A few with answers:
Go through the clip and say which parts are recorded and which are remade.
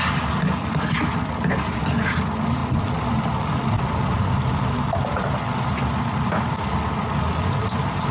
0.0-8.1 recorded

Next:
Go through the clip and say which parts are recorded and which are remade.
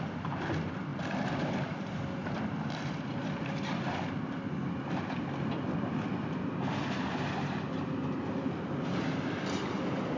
0.0-10.2 recorded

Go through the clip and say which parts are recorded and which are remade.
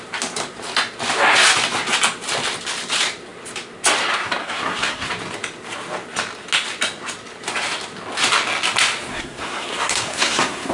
0.0-4.4 recorded; 4.4-5.1 remade; 5.1-9.1 recorded; 9.1-10.7 remade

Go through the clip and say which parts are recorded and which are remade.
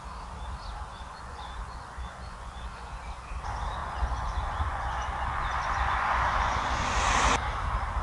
0.0-0.9 recorded; 0.9-3.3 remade; 3.3-3.8 recorded; 3.8-7.0 remade; 7.0-8.0 recorded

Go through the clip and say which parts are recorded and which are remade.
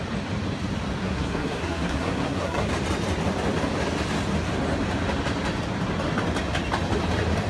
0.0-1.0 recorded; 1.0-2.7 remade; 2.7-7.5 recorded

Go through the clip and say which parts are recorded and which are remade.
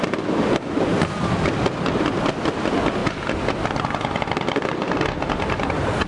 0.0-6.1 recorded